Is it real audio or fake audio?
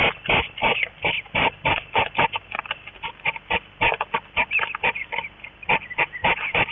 fake